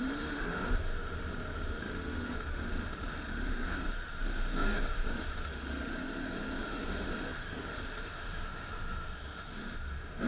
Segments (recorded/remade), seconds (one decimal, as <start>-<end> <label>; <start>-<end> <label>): 0.0-10.3 remade